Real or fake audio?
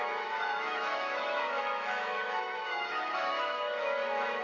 fake